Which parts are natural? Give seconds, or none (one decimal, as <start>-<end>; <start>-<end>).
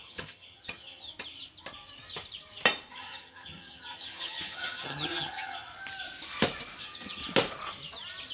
1.1-2.9; 5.7-6.8; 7.2-8.3